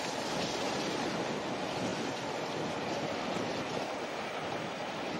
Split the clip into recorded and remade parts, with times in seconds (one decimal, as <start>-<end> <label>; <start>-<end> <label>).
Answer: 0.0-5.2 recorded